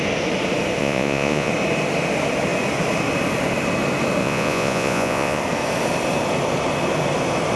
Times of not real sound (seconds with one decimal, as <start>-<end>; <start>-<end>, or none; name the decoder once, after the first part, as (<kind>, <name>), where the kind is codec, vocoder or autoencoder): 0.8-1.5 (vocoder, Vocos); 4.2-5.4